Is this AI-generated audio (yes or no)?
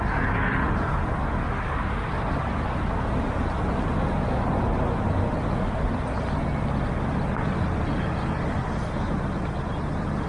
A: no